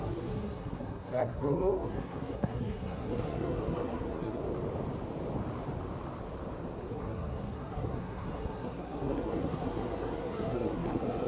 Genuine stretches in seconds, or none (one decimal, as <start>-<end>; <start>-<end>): 4.4-6.9